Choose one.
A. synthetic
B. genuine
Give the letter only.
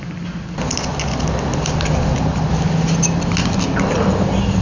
B